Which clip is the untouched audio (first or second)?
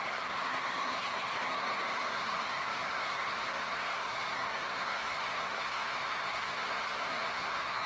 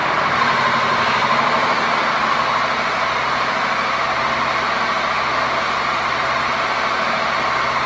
second